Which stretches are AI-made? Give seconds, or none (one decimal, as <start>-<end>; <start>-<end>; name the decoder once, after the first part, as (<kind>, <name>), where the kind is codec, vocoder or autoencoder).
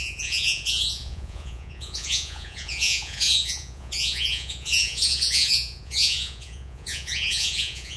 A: 0.0-8.0 (vocoder, Vocos)